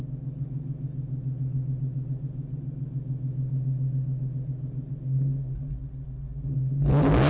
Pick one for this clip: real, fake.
real